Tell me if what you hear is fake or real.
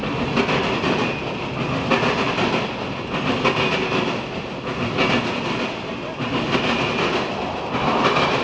real